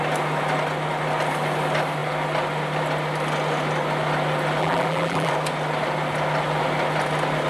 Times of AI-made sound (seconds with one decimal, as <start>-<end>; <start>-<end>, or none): 4.6-5.3